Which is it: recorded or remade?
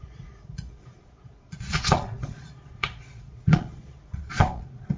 remade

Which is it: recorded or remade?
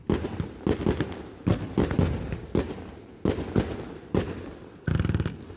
recorded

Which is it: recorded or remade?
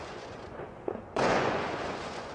remade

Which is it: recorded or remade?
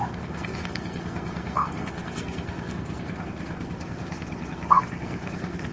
remade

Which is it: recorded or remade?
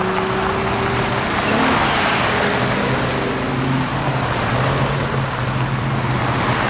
recorded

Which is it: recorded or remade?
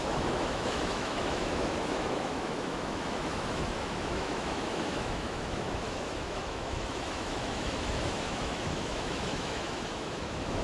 remade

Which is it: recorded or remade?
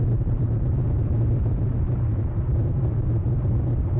remade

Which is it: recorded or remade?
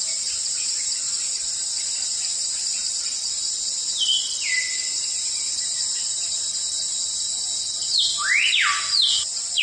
recorded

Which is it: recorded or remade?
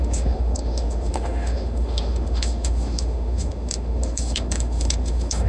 remade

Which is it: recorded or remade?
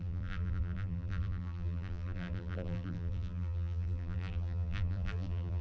remade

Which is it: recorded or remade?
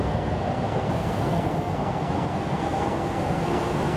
remade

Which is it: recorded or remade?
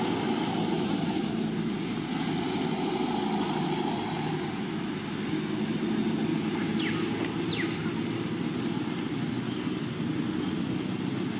recorded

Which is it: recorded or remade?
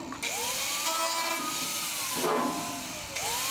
recorded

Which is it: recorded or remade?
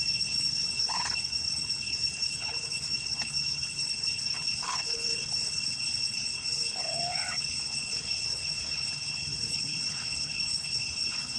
remade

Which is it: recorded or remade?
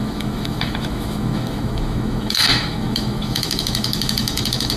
remade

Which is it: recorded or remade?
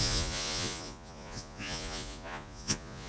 remade